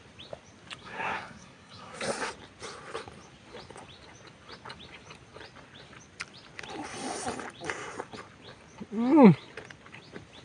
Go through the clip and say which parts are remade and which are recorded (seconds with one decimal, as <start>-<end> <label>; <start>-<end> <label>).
0.0-0.8 recorded; 0.8-2.3 remade; 2.3-10.4 recorded